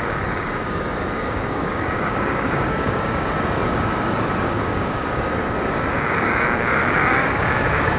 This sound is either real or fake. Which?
fake